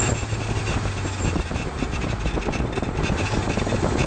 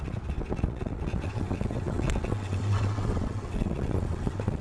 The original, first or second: first